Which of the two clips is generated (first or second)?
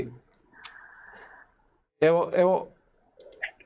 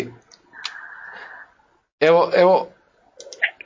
first